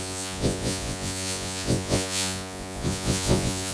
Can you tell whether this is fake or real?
fake